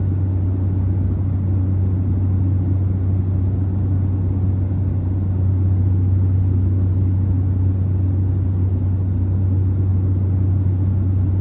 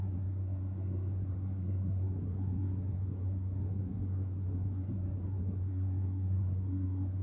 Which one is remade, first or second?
second